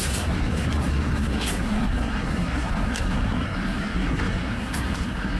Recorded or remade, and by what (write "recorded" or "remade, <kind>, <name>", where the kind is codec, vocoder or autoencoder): remade, codec, SNAC